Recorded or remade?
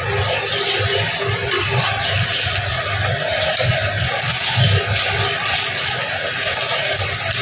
recorded